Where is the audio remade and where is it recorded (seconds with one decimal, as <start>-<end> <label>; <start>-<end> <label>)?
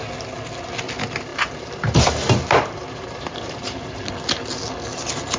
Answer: 0.0-1.3 recorded; 1.3-4.1 remade; 4.1-5.4 recorded